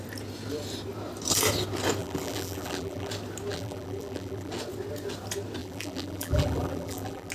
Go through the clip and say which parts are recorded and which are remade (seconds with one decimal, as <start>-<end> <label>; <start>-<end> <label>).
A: 0.0-2.0 recorded; 2.0-3.1 remade; 3.1-3.5 recorded; 3.5-4.5 remade; 4.5-5.6 recorded; 5.6-7.3 remade